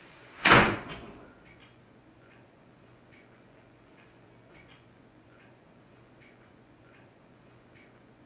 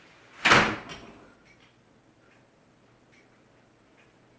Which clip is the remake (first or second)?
first